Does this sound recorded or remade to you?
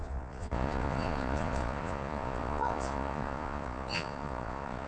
remade